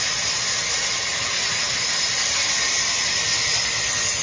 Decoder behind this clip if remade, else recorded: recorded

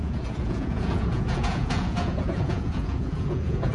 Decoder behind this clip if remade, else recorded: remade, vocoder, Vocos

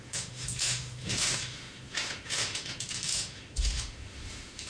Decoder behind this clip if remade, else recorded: remade, autoencoder, DAC-VAE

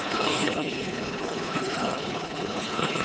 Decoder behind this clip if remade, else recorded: remade, codec, HILCodec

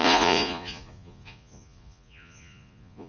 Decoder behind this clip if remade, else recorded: remade, vocoder, Vocos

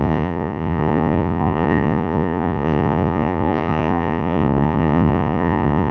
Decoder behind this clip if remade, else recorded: remade, vocoder, Vocos